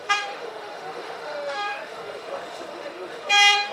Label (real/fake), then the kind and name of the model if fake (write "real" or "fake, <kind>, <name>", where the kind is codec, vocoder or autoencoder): fake, autoencoder, DAC-VAE